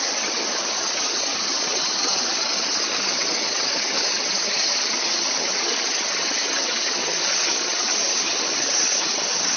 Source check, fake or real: fake